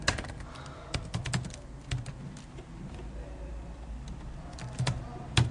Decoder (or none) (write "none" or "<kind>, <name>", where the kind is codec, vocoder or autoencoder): none